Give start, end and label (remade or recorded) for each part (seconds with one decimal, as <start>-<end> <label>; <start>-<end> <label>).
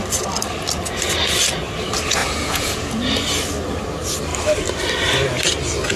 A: 0.0-2.2 recorded; 2.2-3.0 remade; 3.0-6.0 recorded